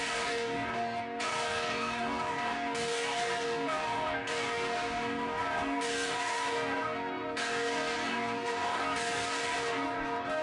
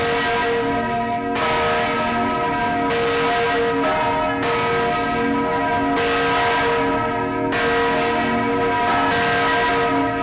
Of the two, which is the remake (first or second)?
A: first